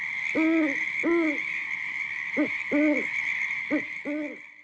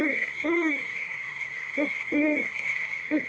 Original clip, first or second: first